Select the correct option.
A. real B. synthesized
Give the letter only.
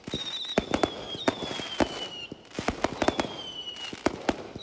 A